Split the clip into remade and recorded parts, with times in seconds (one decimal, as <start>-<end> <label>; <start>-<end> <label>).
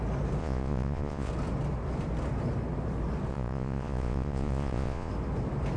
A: 0.0-0.4 recorded; 0.4-1.3 remade; 1.3-3.3 recorded; 3.3-5.1 remade; 5.1-5.8 recorded